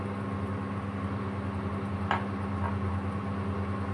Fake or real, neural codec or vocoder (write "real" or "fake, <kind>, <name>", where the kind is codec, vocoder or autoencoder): real